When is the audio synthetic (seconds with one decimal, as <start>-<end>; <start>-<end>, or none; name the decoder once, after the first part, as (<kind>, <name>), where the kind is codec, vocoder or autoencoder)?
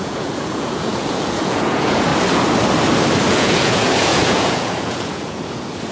0.0-2.1 (vocoder, Vocos); 3.3-5.9